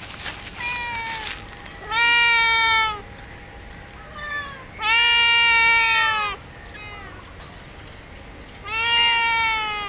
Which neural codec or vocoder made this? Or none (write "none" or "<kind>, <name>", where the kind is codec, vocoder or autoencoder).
none